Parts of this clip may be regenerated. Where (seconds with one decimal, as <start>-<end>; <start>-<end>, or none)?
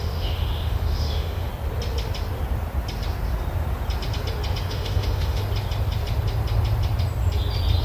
0.0-1.5; 4.7-5.4